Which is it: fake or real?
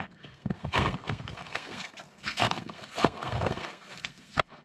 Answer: fake